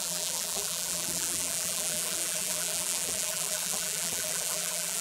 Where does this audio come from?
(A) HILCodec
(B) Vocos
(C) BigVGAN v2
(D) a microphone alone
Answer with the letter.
C